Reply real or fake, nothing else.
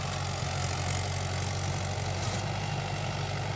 real